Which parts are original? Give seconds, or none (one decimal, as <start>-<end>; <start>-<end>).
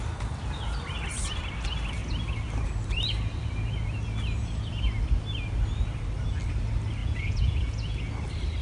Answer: 0.0-7.0; 8.0-8.6